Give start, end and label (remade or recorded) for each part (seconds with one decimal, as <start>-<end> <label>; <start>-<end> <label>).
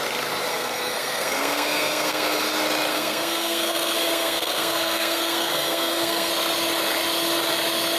0.0-0.5 recorded; 0.5-2.5 remade; 2.5-2.9 recorded; 2.9-6.3 remade; 6.3-8.0 recorded